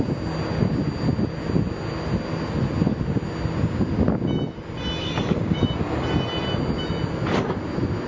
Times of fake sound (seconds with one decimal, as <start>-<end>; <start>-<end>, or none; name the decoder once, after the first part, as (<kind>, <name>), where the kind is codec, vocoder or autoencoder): 5.0-5.6 (codec, DAC)